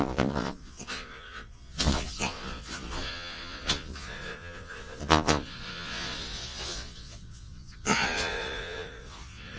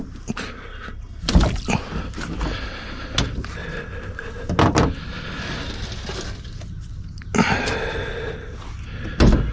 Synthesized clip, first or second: first